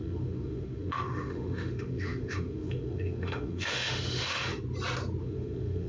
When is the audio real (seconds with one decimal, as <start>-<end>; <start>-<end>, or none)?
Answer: 4.5-5.2